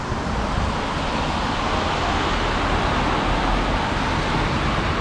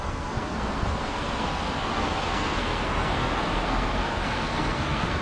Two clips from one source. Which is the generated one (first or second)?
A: second